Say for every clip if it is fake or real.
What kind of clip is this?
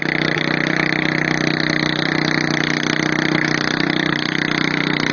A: real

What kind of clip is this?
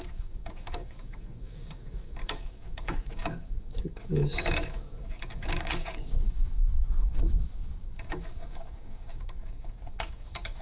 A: fake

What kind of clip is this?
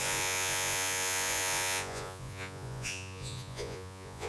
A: fake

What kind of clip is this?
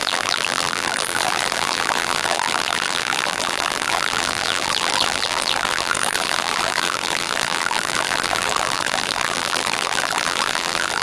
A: fake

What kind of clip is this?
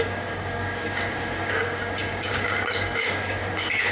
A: fake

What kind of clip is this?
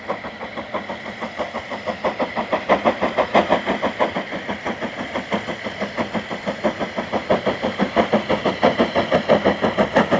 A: real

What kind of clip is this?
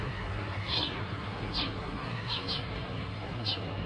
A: fake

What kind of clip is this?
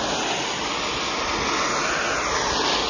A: real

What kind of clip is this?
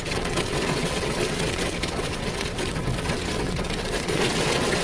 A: fake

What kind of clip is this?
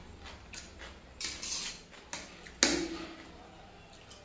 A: real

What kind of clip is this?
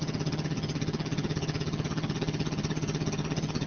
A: fake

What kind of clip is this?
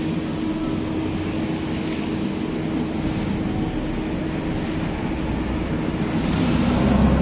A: real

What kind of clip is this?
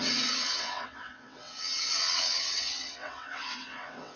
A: fake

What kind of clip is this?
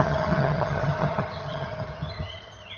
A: fake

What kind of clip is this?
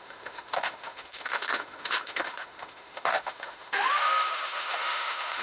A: fake